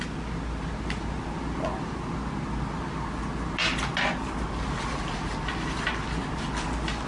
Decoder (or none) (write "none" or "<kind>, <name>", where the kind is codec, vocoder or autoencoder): none